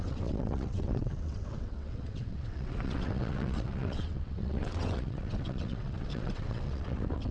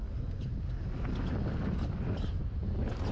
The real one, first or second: second